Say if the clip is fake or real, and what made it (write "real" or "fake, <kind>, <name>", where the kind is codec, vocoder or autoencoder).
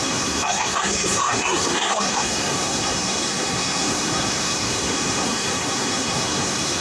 fake, codec, SNAC